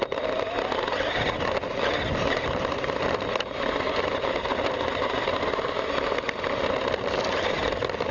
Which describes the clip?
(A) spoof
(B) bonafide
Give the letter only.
B